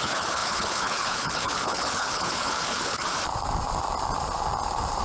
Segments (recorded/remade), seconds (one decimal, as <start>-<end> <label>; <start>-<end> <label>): 0.0-3.1 remade; 3.1-5.0 recorded